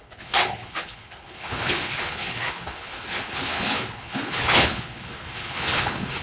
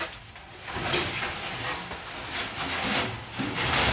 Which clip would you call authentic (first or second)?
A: second